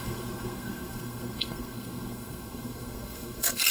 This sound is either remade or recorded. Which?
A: remade